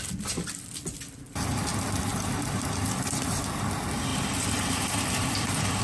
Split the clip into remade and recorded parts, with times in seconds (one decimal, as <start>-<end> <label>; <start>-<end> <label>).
0.0-2.1 recorded; 2.1-3.4 remade; 3.4-4.1 recorded; 4.1-5.8 remade